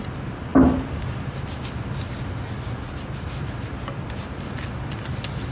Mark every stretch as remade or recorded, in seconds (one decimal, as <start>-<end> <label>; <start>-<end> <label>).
0.0-5.5 recorded